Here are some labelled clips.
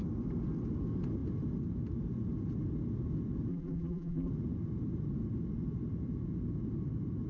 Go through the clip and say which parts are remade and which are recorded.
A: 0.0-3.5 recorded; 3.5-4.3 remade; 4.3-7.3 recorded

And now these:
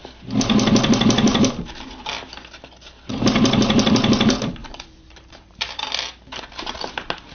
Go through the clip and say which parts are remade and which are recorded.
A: 0.0-4.6 recorded; 4.6-5.8 remade; 5.8-7.3 recorded